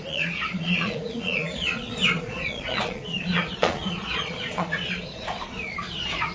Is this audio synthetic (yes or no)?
yes